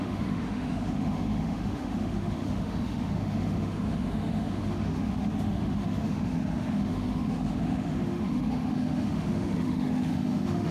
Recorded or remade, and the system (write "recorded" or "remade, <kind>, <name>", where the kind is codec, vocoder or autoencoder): remade, autoencoder, DAC-VAE